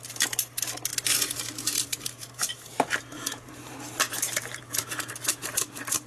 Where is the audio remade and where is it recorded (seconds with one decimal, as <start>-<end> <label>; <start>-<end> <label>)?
0.0-0.9 recorded; 0.9-4.6 remade; 4.6-5.4 recorded; 5.4-6.1 remade